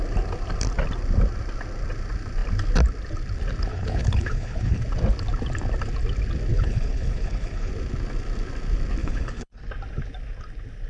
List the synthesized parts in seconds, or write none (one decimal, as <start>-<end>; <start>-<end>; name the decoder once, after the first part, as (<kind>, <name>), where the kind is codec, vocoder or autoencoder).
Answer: 3.7-4.8 (codec, HILCodec); 6.5-7.7; 9.0-9.6